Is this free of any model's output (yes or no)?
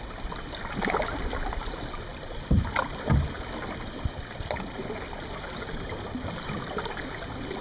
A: yes